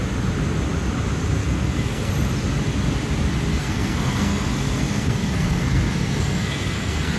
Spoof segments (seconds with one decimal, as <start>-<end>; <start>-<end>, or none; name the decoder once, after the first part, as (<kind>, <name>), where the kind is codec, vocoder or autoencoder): 1.4-2.1 (codec, SNAC); 3.5-7.2